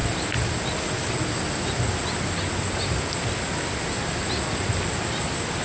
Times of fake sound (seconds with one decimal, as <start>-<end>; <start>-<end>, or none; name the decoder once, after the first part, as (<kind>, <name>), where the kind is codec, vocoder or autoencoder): none